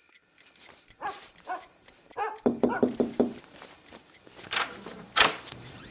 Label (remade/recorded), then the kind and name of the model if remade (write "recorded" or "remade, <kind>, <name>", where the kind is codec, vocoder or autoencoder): remade, vocoder, BigVGAN v2